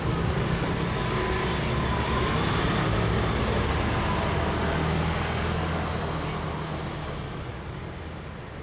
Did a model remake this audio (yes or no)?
no